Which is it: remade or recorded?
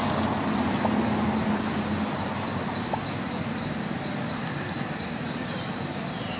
recorded